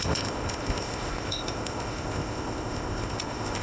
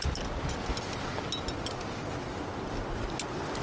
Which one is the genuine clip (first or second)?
second